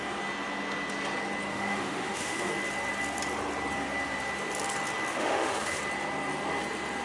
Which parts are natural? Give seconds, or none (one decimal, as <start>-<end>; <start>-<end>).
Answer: 0.0-1.5; 2.5-5.1; 5.8-7.0